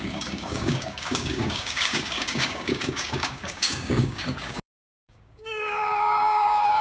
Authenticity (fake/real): fake